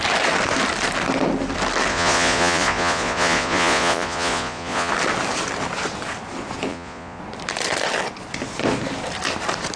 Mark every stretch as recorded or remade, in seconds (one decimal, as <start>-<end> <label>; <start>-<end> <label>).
0.0-1.9 recorded; 1.9-4.9 remade; 4.9-6.7 recorded; 6.7-7.2 remade; 7.2-9.8 recorded